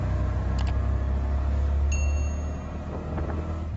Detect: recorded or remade recorded